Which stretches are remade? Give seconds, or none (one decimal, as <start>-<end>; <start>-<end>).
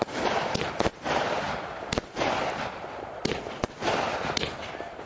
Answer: none